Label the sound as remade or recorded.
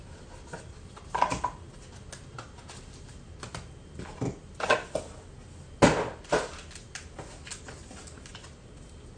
recorded